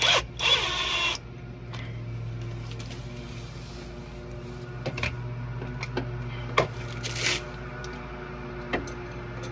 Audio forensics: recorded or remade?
recorded